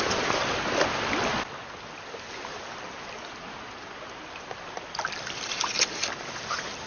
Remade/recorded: recorded